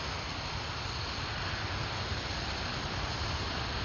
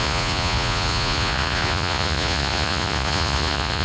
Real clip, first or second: first